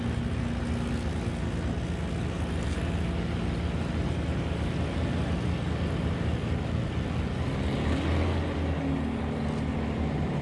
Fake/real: real